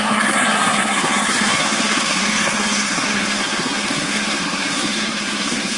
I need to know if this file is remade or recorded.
remade